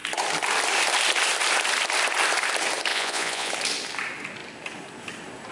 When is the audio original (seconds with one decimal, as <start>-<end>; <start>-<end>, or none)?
0.0-2.9; 3.5-5.5